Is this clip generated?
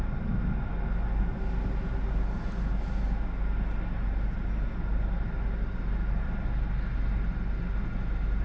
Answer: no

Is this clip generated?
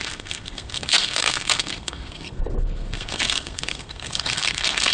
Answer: yes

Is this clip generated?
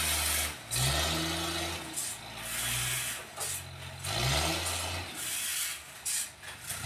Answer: no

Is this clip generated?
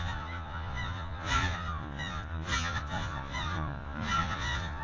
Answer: yes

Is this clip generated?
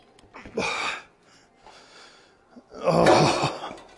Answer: no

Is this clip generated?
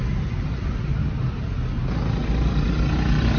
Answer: no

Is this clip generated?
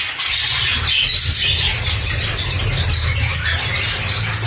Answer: no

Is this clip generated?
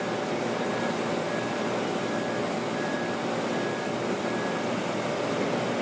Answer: no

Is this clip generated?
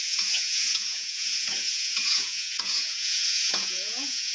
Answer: yes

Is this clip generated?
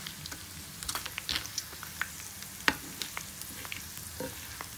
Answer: no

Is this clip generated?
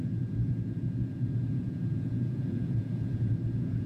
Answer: yes